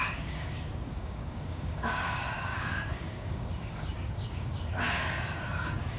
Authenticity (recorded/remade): remade